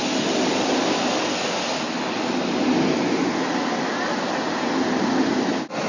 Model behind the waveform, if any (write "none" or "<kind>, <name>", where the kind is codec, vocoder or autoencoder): none